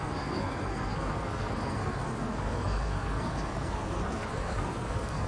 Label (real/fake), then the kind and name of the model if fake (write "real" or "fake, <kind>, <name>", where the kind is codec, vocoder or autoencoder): fake, codec, SNAC